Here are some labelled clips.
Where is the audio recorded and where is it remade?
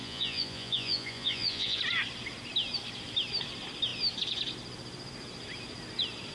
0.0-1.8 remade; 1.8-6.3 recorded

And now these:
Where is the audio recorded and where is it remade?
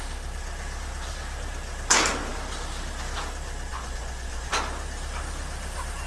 0.0-3.7 recorded; 3.7-4.5 remade; 4.5-6.1 recorded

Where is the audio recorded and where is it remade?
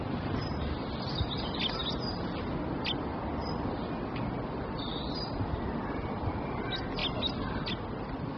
0.0-8.4 recorded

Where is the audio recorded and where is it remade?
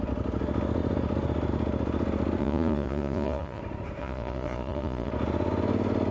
0.0-2.4 recorded; 2.4-3.6 remade; 3.6-4.0 recorded; 4.0-5.1 remade; 5.1-6.1 recorded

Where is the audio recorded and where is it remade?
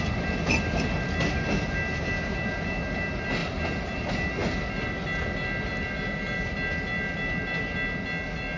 0.0-8.6 recorded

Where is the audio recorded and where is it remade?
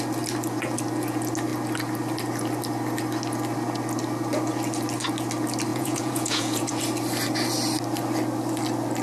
0.0-5.7 recorded; 5.7-6.8 remade; 6.8-9.0 recorded